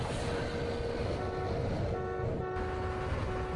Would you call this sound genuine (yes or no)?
yes